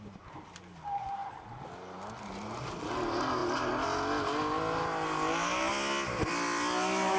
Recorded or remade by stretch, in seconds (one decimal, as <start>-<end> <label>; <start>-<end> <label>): 0.0-7.2 recorded